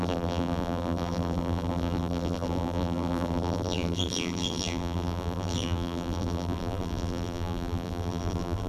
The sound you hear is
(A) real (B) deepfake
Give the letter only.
B